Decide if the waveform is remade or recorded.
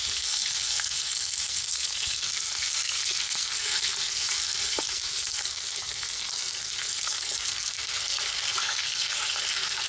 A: remade